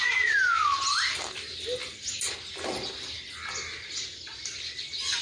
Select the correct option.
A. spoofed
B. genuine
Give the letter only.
B